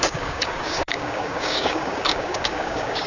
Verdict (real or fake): fake